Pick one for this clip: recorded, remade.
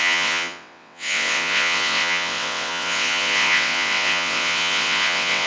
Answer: remade